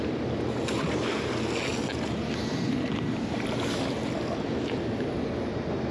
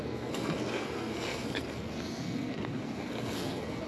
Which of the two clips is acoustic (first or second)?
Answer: first